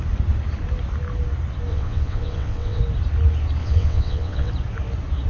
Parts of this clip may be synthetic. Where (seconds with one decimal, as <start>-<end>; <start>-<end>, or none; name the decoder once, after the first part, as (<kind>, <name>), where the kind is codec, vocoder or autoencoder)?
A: 1.7-2.8 (vocoder, WaveNeXt); 3.6-4.5